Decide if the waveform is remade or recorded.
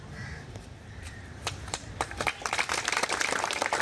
remade